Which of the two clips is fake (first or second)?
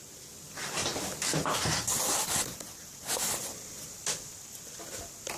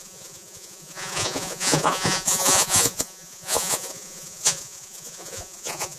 second